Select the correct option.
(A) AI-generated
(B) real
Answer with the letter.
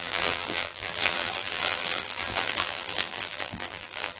A